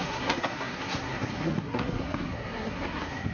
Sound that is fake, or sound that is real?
fake